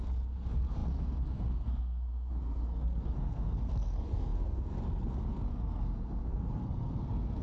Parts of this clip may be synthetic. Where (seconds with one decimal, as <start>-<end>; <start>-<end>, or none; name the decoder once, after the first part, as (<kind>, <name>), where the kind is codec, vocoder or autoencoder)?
0.0-7.4 (codec, SNAC)